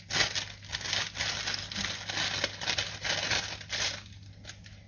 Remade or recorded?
recorded